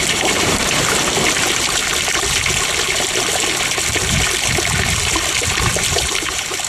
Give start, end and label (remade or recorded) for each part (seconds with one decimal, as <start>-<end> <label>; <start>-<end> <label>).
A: 0.0-1.8 remade; 1.8-5.8 recorded; 5.8-6.7 remade